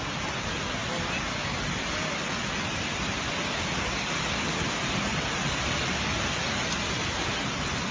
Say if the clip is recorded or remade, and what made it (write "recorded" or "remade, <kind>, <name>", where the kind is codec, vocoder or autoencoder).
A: recorded